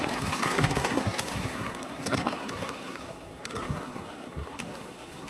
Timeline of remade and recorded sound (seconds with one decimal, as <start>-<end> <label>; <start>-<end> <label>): 0.0-5.3 remade